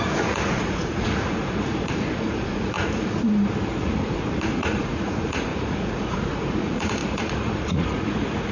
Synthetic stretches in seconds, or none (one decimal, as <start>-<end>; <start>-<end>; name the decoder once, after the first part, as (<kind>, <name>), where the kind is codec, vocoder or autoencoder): 0.0-3.2 (vocoder, Vocos); 3.8-8.5

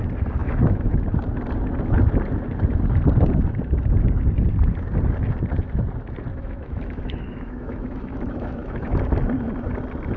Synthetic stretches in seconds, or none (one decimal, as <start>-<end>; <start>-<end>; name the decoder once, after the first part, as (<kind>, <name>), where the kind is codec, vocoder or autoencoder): 0.4-1.0 (autoencoder, DAC-VAE); 6.3-9.0